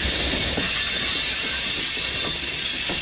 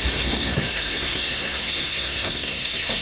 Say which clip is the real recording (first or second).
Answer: first